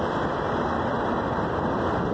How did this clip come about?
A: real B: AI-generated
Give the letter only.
A